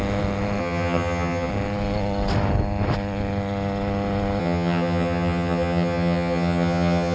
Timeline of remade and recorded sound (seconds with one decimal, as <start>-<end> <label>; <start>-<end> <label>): 0.0-0.6 recorded; 0.6-1.5 remade; 1.5-4.4 recorded; 4.4-7.1 remade